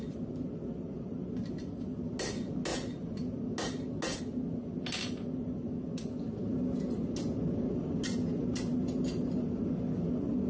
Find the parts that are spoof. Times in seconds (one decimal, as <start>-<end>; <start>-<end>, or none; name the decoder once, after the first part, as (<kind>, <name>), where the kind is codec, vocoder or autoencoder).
none